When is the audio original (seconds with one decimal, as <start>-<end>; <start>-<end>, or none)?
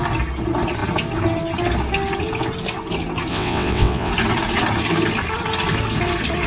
0.0-3.3; 4.1-6.5